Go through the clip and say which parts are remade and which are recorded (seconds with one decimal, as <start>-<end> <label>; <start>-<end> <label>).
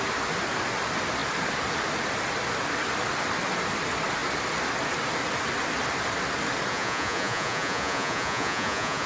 0.0-6.7 recorded; 6.7-9.1 remade